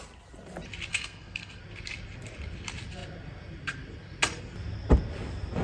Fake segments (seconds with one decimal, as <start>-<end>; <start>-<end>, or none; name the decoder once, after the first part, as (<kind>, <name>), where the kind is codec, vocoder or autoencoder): 0.9-1.6 (codec, SNAC)